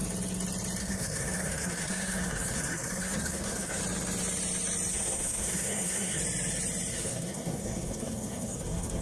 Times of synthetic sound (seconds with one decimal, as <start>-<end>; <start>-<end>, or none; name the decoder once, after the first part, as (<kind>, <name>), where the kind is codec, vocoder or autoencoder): 0.8-3.8 (codec, SNAC); 4.9-6.2; 6.9-9.0